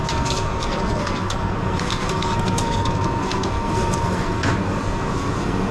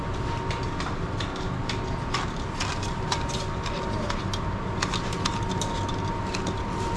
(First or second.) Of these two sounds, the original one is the second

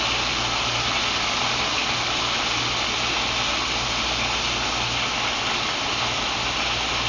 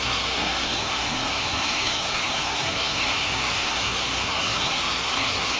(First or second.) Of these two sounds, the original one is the first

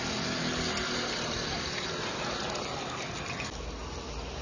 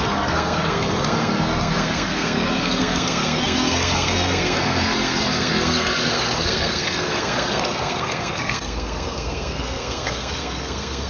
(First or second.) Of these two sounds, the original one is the first